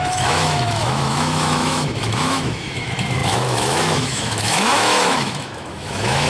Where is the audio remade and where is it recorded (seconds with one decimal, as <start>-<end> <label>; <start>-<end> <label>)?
0.0-6.3 remade